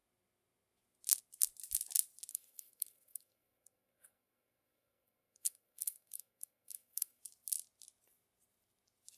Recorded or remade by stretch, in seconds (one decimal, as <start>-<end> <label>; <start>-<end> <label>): 0.0-2.3 recorded; 2.3-7.2 remade; 7.2-9.2 recorded